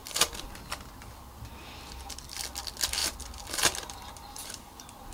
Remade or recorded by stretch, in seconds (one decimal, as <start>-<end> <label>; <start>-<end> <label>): 0.0-0.6 remade; 0.6-3.0 recorded; 3.0-5.1 remade